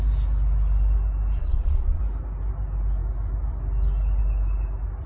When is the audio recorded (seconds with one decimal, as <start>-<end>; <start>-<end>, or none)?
0.0-1.4; 2.0-5.1